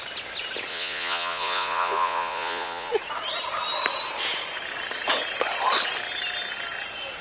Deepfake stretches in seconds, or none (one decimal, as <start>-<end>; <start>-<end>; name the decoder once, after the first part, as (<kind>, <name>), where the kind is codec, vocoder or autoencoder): 0.7-2.9 (vocoder, Vocos)